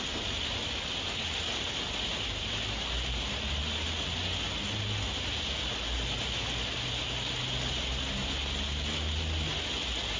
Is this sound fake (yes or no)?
no